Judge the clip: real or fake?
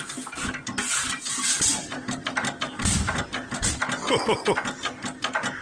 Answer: real